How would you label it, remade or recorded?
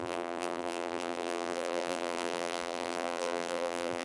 remade